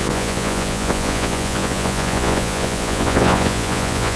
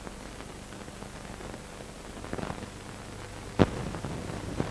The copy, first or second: first